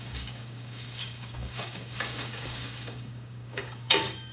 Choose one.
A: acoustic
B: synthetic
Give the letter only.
B